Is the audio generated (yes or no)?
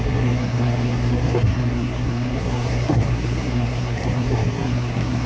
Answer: yes